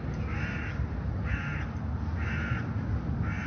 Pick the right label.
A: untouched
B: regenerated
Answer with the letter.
A